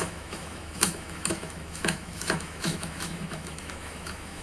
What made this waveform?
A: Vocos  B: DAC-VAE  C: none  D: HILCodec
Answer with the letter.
B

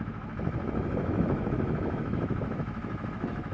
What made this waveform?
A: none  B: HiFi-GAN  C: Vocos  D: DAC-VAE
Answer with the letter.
D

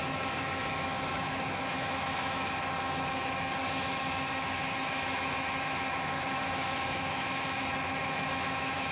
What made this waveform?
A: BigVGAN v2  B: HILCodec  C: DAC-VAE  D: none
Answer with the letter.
C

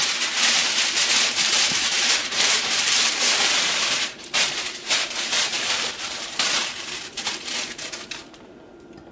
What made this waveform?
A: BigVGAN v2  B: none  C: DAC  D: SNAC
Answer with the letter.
A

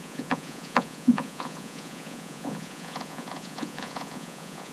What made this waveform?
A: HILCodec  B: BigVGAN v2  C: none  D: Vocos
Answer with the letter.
D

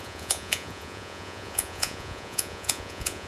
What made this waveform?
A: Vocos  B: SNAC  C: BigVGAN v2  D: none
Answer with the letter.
A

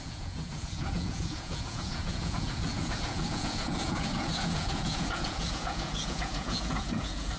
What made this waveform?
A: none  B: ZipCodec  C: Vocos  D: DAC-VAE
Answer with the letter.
C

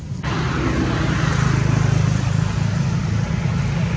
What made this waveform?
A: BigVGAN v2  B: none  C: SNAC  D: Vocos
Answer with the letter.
B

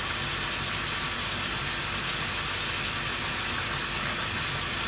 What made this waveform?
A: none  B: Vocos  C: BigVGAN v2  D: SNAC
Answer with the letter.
A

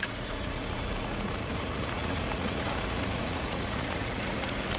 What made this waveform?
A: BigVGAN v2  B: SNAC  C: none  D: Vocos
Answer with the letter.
D